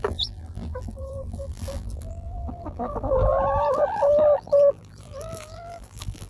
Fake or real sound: fake